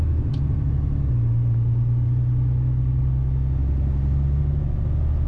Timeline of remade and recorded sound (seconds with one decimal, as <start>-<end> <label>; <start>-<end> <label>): 0.0-5.3 recorded